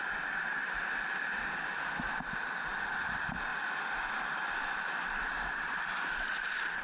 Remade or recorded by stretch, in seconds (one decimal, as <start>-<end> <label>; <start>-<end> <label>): 0.0-6.8 recorded